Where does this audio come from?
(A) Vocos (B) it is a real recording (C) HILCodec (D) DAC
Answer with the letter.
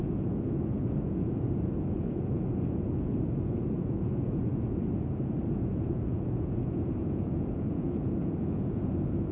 A